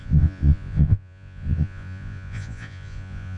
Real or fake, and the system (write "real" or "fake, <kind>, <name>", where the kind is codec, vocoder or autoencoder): fake, vocoder, Vocos